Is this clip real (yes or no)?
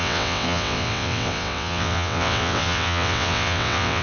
no